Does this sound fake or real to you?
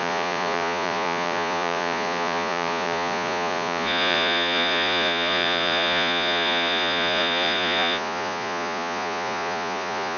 fake